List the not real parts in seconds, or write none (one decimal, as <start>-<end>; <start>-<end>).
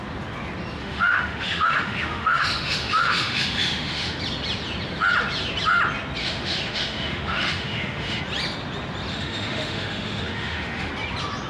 0.8-4.2; 6.2-8.2; 9.1-10.9